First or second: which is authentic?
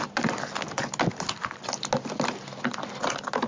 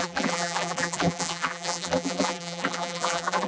first